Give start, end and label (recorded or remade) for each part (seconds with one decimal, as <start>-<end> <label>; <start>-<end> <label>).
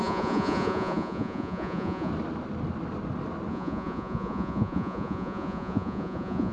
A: 0.0-2.1 remade; 2.1-3.5 recorded; 3.5-6.5 remade